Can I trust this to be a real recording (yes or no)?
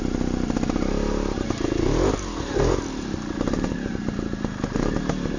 yes